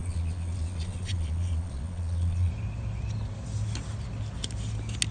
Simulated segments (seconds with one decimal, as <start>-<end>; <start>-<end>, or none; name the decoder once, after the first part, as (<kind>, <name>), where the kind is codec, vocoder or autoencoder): 0.0-2.5 (vocoder, Vocos)